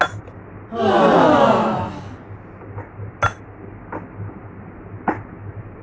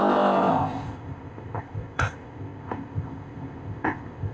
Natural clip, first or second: first